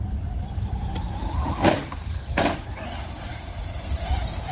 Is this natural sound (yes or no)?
yes